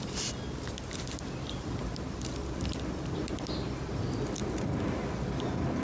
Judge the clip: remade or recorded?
recorded